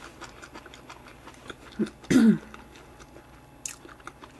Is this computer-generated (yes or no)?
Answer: no